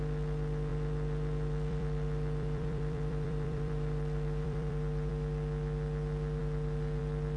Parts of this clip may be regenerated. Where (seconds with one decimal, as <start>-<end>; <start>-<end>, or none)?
0.7-5.1